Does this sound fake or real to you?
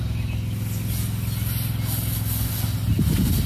real